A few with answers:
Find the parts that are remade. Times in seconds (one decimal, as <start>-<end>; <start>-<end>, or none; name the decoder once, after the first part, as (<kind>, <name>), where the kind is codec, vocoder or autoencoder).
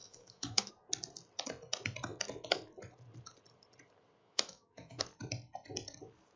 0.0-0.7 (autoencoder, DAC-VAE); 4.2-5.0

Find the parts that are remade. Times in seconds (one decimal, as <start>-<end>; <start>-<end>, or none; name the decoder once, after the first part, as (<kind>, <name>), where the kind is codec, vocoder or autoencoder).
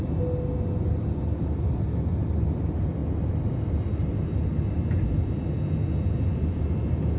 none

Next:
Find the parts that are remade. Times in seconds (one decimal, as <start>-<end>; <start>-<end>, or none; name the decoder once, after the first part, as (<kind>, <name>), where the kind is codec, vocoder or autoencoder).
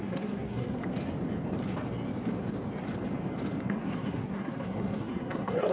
0.0-0.8 (codec, SNAC); 3.7-5.7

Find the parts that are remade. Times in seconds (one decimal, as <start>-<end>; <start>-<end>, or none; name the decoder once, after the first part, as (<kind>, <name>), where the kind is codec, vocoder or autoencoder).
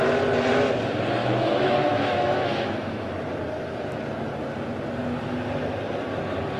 1.2-3.1 (autoencoder, DAC-VAE)